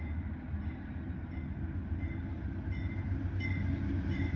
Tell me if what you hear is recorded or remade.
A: recorded